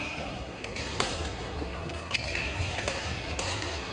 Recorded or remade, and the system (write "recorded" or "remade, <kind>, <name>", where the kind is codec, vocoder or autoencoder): remade, codec, SNAC